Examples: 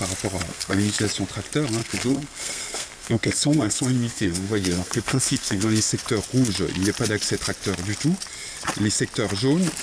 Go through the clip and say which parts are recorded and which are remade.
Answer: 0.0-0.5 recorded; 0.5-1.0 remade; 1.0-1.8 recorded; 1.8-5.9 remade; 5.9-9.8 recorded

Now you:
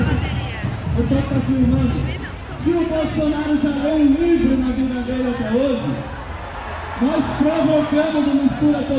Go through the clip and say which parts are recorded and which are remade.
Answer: 0.0-7.3 recorded; 7.3-7.9 remade; 7.9-9.0 recorded

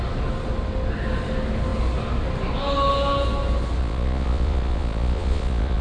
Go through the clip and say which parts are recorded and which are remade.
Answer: 0.0-3.8 recorded; 3.8-5.8 remade